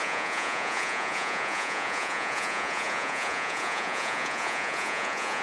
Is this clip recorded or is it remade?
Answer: remade